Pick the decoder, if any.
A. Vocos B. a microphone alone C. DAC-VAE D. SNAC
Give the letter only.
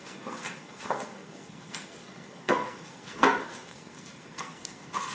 D